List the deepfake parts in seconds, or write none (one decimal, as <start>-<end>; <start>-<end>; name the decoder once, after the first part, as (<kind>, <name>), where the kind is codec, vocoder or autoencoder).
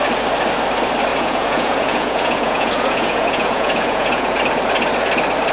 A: 1.1-4.4 (vocoder, Vocos)